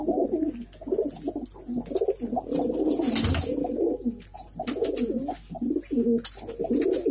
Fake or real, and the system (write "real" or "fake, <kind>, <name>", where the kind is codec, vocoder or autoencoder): real